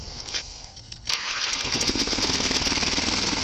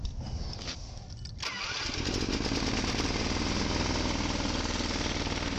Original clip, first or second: second